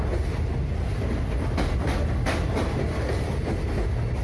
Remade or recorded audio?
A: recorded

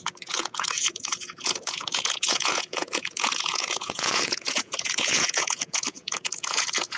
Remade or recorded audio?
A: remade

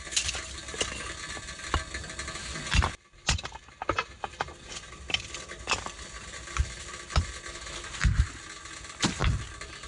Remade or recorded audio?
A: recorded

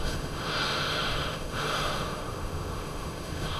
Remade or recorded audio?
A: remade